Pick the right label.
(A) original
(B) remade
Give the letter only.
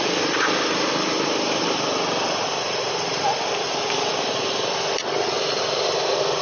A